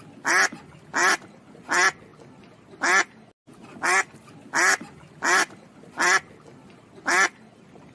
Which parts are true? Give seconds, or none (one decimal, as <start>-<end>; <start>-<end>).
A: 0.0-7.9